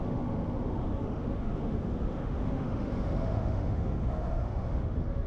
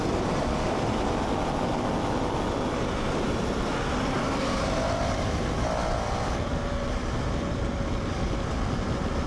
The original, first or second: second